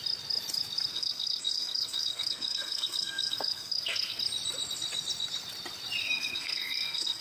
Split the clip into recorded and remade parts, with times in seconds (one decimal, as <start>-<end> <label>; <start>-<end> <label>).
0.0-0.9 recorded; 0.9-4.2 remade; 4.2-6.0 recorded; 6.0-7.2 remade

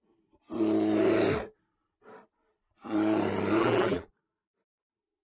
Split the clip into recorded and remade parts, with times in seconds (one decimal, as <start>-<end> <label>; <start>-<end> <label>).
0.0-3.6 recorded; 3.6-4.1 remade; 4.1-5.2 recorded

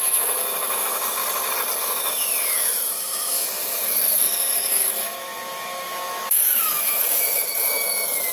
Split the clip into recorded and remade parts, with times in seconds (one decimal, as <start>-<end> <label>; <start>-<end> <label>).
0.0-1.2 remade; 1.2-1.8 recorded; 1.8-8.3 remade

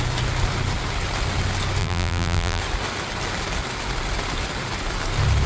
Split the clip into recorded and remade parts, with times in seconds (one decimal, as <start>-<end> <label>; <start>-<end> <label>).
0.0-1.8 recorded; 1.8-2.6 remade; 2.6-5.5 recorded